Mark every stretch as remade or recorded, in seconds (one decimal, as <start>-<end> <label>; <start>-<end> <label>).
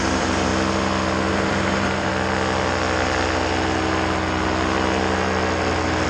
0.0-0.5 remade; 0.5-1.3 recorded; 1.3-2.1 remade; 2.1-6.1 recorded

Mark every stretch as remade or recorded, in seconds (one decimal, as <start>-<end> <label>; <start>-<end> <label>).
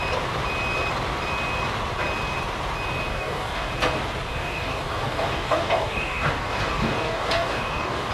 0.0-3.1 recorded; 3.1-3.7 remade; 3.7-4.3 recorded; 4.3-8.1 remade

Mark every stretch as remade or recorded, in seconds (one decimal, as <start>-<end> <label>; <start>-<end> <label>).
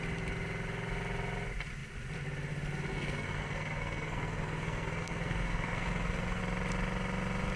0.0-2.9 recorded; 2.9-6.4 remade; 6.4-7.6 recorded